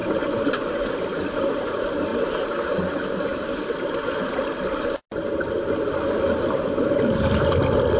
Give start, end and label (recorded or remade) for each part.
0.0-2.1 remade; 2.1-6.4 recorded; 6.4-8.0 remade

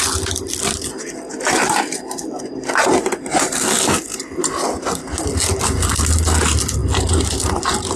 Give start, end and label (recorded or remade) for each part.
0.0-5.0 remade; 5.0-5.6 recorded; 5.6-6.8 remade; 6.8-7.5 recorded; 7.5-8.0 remade